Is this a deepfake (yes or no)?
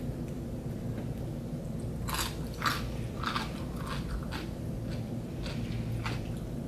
no